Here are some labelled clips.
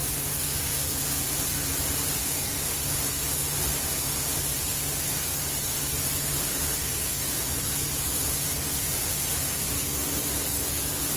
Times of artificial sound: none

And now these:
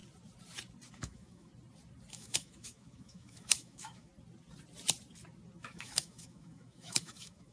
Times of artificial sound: 0.9-1.5 (autoencoder, DAC-VAE); 2.1-4.1; 5.6-7.5